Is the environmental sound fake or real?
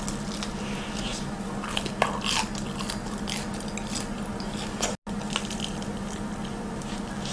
real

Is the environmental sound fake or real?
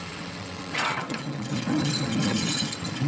fake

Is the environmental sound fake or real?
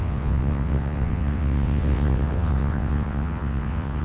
fake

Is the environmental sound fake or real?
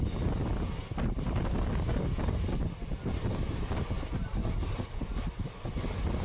real